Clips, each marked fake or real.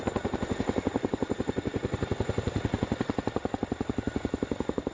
fake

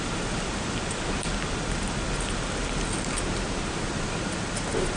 real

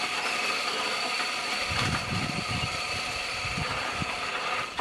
fake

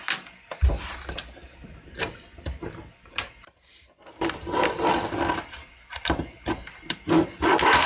real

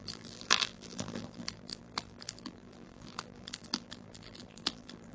fake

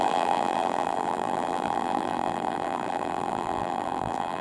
fake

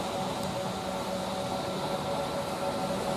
real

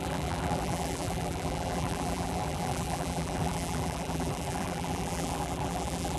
fake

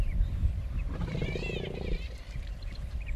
fake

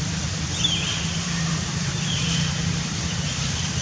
fake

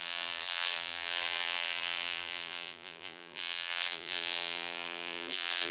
fake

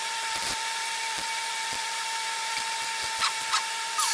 fake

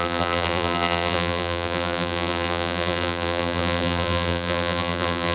fake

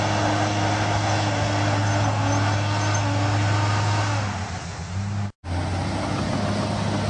real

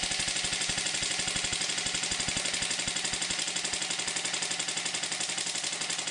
real